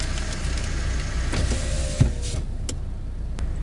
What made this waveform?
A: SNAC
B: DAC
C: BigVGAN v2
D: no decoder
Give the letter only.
D